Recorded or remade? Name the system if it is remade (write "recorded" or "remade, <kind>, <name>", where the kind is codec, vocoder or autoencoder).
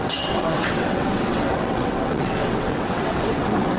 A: remade, vocoder, WaveNeXt